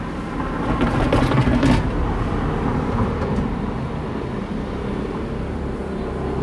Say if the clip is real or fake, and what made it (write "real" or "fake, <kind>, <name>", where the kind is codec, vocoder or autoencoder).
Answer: real